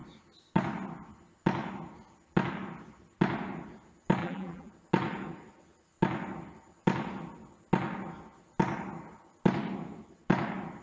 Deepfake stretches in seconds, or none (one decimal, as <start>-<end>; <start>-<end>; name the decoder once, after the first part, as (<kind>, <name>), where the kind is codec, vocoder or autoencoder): 4.2-4.7 (vocoder, BigVGAN v2)